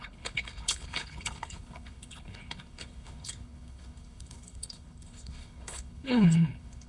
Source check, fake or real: fake